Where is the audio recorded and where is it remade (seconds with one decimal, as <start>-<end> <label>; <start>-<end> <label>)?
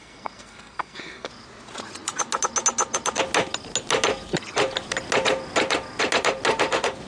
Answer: 0.0-1.3 remade; 1.3-7.1 recorded